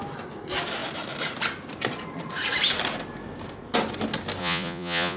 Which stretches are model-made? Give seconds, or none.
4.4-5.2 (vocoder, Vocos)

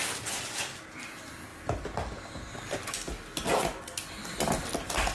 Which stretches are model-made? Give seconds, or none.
none